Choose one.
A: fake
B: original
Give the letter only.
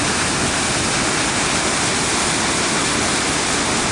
B